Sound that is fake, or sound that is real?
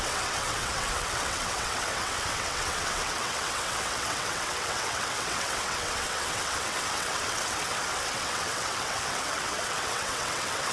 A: fake